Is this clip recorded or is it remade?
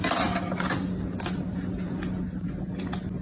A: recorded